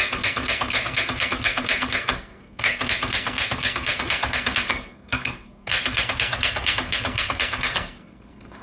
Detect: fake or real fake